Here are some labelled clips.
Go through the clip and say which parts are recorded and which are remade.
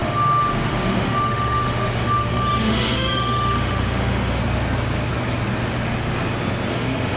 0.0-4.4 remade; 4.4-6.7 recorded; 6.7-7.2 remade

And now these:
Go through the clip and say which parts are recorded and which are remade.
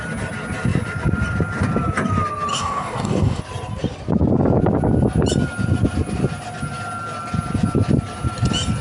0.0-2.5 recorded; 2.5-3.4 remade; 3.4-8.8 recorded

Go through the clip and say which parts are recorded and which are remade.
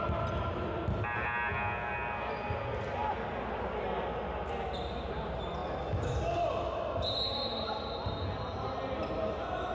0.0-9.7 recorded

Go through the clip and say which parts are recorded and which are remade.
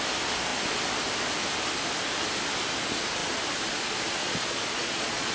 0.0-4.2 recorded; 4.2-5.3 remade